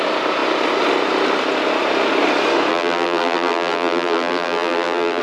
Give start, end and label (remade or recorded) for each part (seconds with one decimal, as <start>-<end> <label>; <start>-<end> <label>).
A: 0.0-2.7 recorded; 2.7-5.2 remade